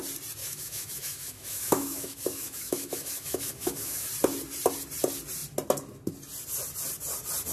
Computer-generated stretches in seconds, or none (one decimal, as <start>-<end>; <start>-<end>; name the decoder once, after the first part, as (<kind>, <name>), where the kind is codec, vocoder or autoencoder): 0.4-4.1 (autoencoder, DAC-VAE)